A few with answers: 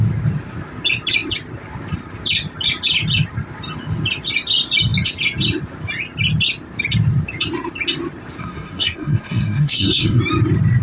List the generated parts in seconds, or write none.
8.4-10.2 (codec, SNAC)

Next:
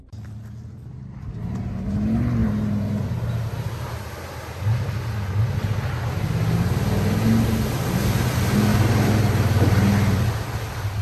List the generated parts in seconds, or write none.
none

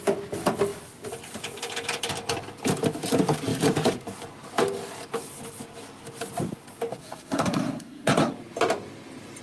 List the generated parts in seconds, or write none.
7.0-8.3 (codec, SNAC)

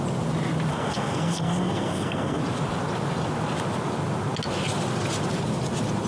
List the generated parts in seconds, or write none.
0.7-2.4 (codec, SNAC)

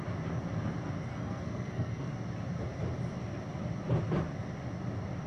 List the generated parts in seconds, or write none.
1.1-2.1 (codec, SNAC)

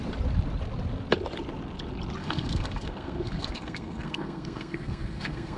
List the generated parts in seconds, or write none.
2.2-5.6 (codec, SNAC)

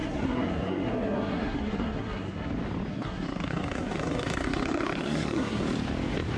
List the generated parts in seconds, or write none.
0.0-2.5 (codec, SNAC); 2.9-5.6